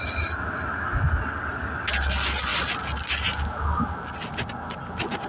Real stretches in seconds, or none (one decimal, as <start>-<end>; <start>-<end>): 0.0-5.3